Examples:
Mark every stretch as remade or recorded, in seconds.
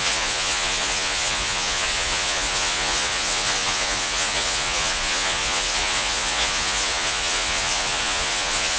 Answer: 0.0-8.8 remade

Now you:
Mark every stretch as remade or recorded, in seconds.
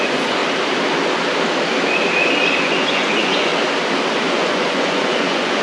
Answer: 0.0-0.4 remade; 0.4-2.6 recorded; 2.6-3.5 remade; 3.5-4.2 recorded; 4.2-5.6 remade